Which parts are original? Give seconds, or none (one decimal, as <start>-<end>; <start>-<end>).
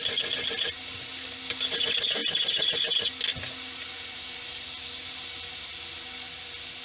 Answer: 0.0-6.8